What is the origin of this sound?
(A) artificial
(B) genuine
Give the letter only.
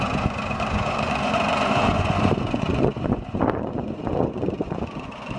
A